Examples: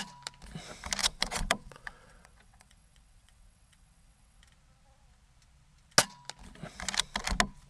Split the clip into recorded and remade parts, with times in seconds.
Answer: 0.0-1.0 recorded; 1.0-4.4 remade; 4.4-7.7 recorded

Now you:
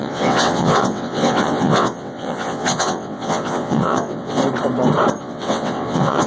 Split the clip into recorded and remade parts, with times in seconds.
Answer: 0.0-4.4 remade; 4.4-5.2 recorded; 5.2-6.3 remade